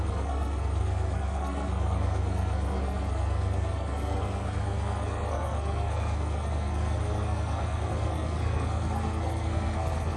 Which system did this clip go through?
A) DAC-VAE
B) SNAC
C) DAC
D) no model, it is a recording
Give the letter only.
B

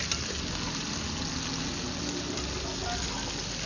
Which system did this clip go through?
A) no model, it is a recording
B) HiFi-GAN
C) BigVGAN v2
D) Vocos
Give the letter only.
A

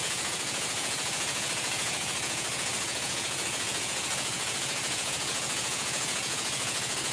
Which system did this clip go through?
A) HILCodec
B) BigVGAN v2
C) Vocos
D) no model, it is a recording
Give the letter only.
C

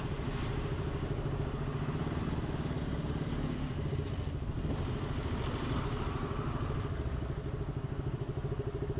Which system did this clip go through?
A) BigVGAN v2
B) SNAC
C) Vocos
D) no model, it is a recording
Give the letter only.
D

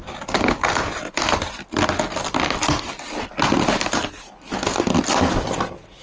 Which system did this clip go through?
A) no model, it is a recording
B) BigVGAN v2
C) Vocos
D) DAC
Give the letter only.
A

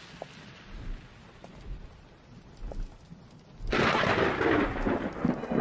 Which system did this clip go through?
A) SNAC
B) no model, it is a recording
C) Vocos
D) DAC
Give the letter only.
B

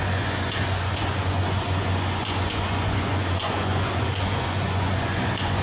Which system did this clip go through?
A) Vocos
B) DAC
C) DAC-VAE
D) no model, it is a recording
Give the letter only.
A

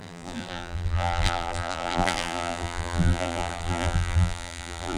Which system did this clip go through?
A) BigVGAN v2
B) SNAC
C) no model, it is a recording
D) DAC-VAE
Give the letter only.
A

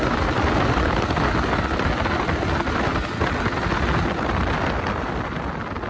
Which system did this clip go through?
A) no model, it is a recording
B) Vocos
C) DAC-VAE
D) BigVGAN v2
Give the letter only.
A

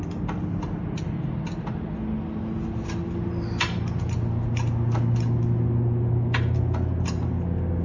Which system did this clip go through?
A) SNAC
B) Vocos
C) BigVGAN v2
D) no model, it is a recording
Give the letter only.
D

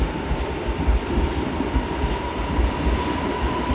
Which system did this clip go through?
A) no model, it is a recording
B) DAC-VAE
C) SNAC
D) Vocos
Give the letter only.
A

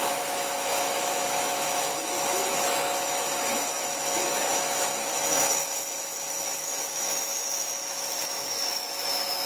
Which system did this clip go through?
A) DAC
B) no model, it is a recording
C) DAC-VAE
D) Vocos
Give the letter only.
C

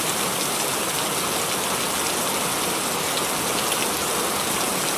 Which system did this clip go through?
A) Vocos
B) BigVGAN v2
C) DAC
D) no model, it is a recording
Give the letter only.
D